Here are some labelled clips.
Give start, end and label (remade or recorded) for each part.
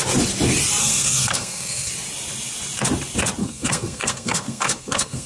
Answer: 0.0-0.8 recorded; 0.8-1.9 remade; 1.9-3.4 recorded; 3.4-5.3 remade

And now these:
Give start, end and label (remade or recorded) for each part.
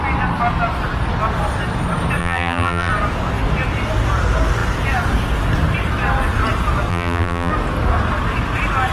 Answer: 0.0-2.2 recorded; 2.2-2.9 remade; 2.9-6.9 recorded; 6.9-7.5 remade; 7.5-8.9 recorded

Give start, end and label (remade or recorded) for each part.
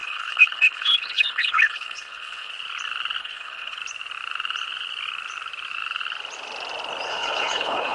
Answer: 0.0-2.5 remade; 2.5-3.2 recorded; 3.2-3.8 remade; 3.8-7.1 recorded; 7.1-7.9 remade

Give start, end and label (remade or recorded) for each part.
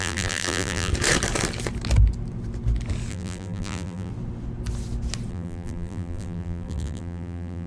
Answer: 0.0-0.9 remade; 0.9-3.1 recorded; 3.1-4.1 remade; 4.1-5.3 recorded; 5.3-7.7 remade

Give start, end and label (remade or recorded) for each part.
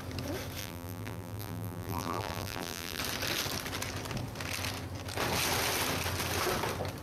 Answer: 0.0-0.6 recorded; 0.6-3.0 remade; 3.0-7.0 recorded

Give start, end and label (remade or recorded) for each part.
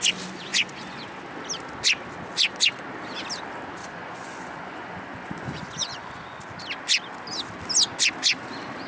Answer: 0.0-0.5 recorded; 0.5-1.0 remade; 1.0-3.8 recorded; 3.8-6.4 remade; 6.4-8.9 recorded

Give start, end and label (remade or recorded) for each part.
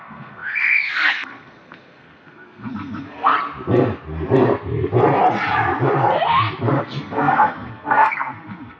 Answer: 0.0-3.3 remade; 3.3-6.8 recorded; 6.8-8.8 remade